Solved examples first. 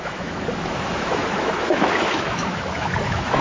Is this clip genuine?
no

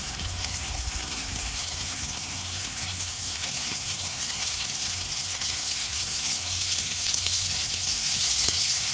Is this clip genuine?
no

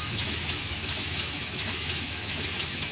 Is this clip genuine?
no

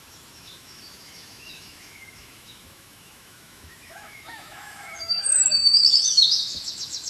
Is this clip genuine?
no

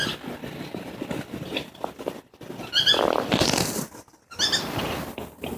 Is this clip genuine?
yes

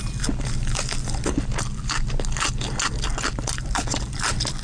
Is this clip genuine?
yes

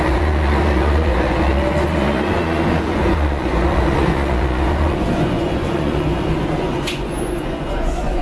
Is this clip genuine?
no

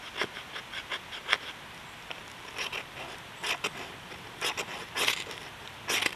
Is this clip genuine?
yes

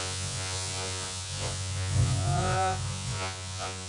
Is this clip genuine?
no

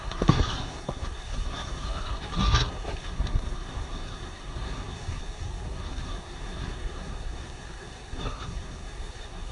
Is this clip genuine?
no